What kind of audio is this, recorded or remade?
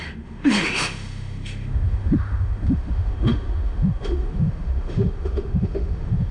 remade